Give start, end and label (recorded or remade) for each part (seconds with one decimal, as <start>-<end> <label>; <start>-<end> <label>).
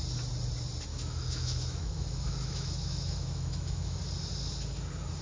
0.0-0.9 recorded; 0.9-4.0 remade; 4.0-5.2 recorded